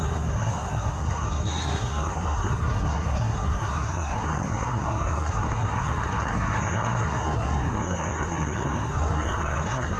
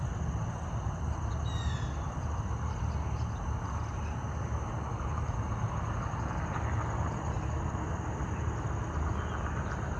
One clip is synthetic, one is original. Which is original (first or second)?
second